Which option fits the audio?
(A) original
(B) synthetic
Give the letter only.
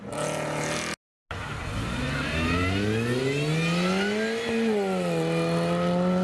A